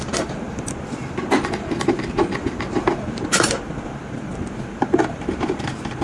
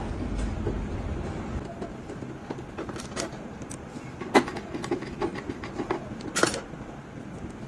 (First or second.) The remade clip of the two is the first